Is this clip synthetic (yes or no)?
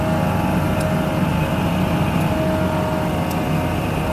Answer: no